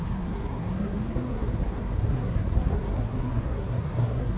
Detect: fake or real fake